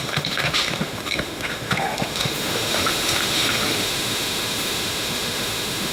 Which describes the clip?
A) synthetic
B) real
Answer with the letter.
A